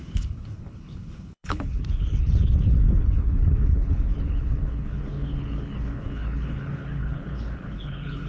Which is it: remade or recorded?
remade